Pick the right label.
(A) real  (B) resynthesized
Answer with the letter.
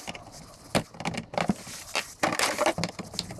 A